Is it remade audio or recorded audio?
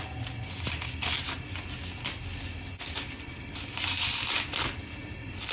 recorded